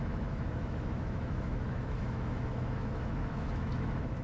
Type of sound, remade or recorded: remade